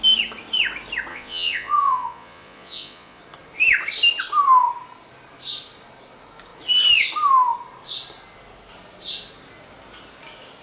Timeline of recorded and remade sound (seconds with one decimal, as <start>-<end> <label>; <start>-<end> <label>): 0.0-1.1 recorded; 1.1-3.2 remade; 3.2-10.6 recorded